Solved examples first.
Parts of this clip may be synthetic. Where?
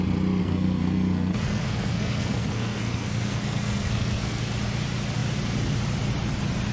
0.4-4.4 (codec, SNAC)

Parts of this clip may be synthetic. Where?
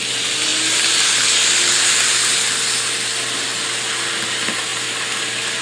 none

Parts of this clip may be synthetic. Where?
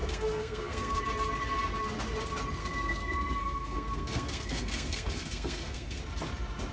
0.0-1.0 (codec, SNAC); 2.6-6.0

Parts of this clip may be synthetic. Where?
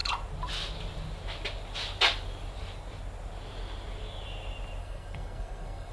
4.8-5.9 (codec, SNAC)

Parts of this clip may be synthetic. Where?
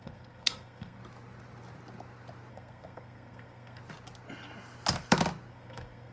0.0-1.0 (codec, SNAC); 2.5-3.8; 5.5-6.1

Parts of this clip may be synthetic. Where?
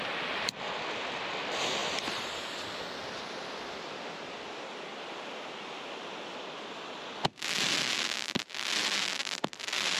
none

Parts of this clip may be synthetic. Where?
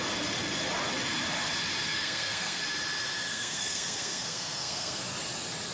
1.9-2.6 (codec, SNAC); 3.3-5.0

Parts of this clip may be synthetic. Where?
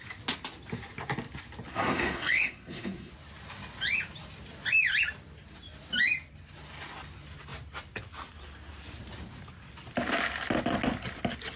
1.7-3.1 (codec, SNAC)